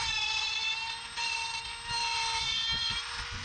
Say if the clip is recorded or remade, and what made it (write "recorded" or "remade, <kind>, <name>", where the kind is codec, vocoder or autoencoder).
recorded